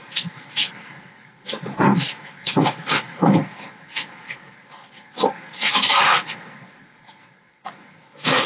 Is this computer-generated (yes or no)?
yes